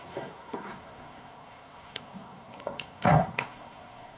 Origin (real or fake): fake